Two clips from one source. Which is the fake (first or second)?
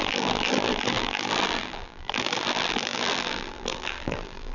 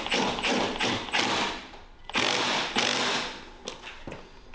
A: first